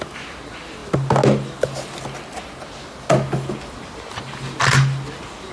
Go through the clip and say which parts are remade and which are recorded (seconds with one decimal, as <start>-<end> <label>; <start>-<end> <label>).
0.0-5.5 recorded